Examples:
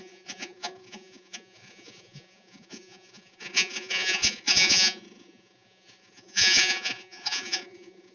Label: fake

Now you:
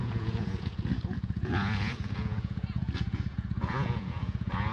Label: fake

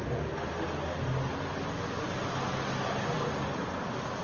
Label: real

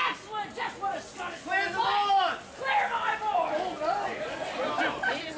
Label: real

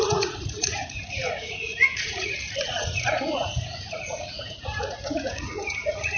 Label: fake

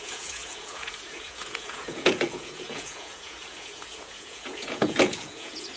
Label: fake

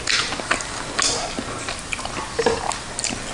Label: real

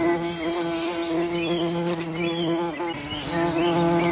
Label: real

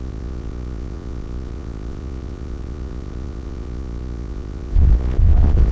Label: fake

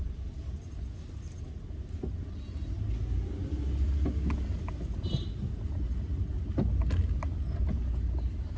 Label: real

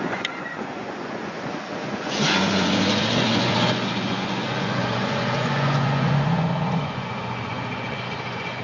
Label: fake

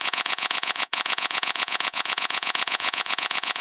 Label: fake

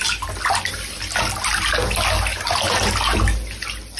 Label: real